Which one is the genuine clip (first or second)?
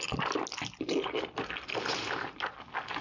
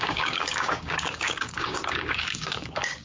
first